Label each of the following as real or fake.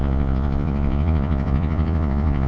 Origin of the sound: fake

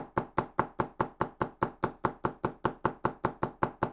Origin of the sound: real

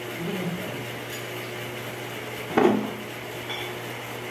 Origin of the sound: real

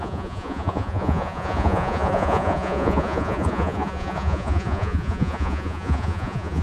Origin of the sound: fake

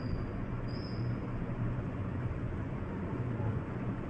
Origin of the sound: fake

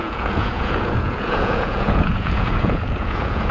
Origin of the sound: fake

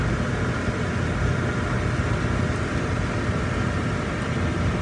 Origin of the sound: real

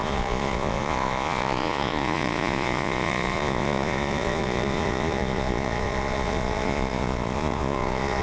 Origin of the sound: fake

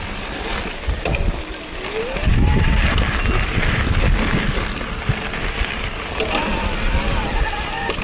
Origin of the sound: real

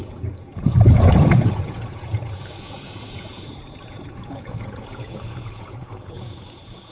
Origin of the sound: fake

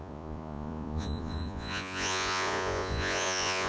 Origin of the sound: fake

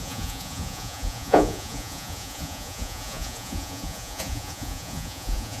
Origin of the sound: fake